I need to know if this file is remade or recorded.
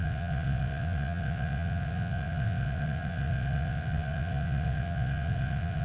remade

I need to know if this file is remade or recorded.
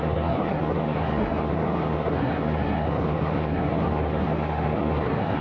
remade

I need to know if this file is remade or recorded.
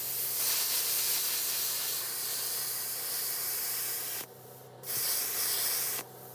remade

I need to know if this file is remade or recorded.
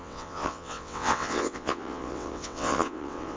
remade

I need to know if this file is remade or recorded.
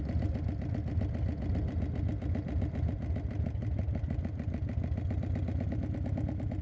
recorded